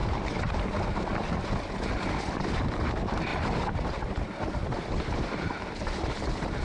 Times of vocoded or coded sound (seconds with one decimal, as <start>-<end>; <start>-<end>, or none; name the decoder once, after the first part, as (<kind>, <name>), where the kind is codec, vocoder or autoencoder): 0.0-0.5 (vocoder, BigVGAN v2); 3.3-3.9; 4.6-6.6